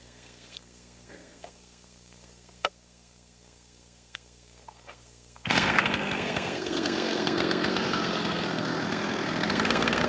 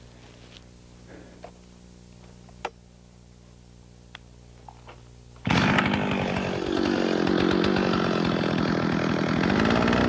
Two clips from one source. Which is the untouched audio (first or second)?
second